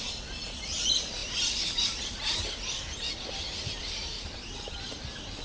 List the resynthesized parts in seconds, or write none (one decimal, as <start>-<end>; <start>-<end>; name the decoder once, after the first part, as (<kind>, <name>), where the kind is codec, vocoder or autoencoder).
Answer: none

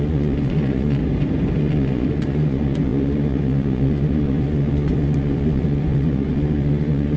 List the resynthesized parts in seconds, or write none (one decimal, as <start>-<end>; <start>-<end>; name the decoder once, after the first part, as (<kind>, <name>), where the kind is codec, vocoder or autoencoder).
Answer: 0.0-1.0 (vocoder, Vocos); 1.6-7.2

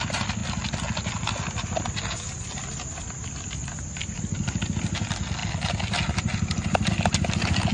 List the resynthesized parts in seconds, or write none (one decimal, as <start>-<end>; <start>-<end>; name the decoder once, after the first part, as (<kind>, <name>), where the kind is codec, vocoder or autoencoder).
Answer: none